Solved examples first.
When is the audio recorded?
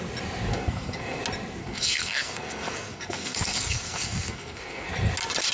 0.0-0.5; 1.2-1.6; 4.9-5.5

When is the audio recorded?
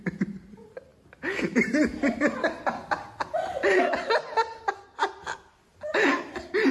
0.0-6.7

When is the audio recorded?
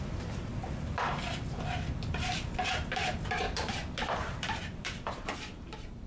0.5-1.9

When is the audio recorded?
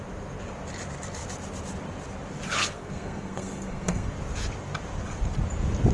0.0-2.6; 4.1-5.9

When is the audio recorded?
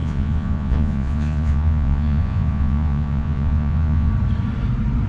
4.1-5.1